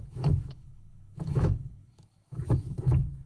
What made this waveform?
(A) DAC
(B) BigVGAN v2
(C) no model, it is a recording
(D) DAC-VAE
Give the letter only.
D